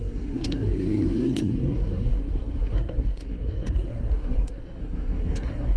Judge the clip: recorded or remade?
remade